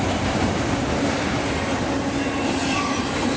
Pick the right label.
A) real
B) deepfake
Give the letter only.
B